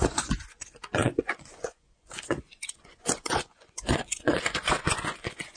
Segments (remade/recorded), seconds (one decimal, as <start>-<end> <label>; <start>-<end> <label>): 0.0-5.6 remade